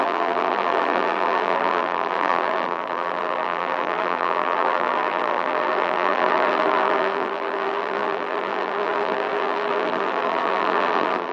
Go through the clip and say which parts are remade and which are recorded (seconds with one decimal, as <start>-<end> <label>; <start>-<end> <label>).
0.0-11.3 remade

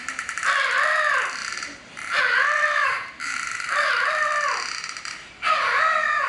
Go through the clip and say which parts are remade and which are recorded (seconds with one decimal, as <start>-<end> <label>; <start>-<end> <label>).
0.0-4.3 remade; 4.3-5.0 recorded; 5.0-6.3 remade